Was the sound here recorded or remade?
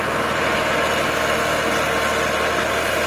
recorded